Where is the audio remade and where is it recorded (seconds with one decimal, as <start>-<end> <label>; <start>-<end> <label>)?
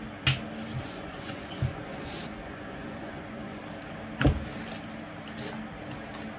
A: 0.0-0.8 recorded; 0.8-3.6 remade; 3.6-6.4 recorded